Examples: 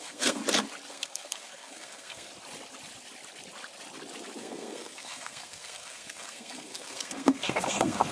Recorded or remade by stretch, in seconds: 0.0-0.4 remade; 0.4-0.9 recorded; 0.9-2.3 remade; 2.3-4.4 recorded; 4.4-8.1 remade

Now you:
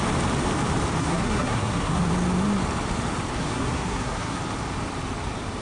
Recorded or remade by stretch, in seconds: 0.0-1.0 recorded; 1.0-2.0 remade; 2.0-3.4 recorded; 3.4-4.4 remade; 4.4-5.6 recorded

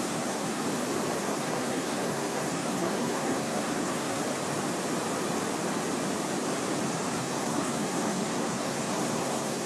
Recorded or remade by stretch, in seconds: 0.0-0.6 remade; 0.6-1.2 recorded; 1.2-4.2 remade; 4.2-7.1 recorded; 7.1-9.7 remade

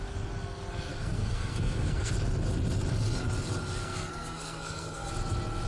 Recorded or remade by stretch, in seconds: 0.0-0.9 recorded; 0.9-2.1 remade; 2.1-3.8 recorded; 3.8-5.1 remade; 5.1-5.7 recorded